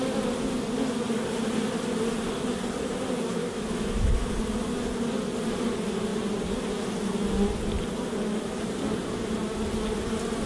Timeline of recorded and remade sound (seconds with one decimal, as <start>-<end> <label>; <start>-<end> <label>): 0.0-3.4 recorded; 3.4-4.3 remade; 4.3-10.5 recorded